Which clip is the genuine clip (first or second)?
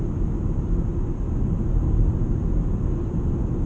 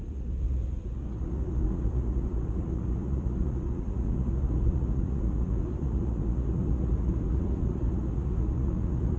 first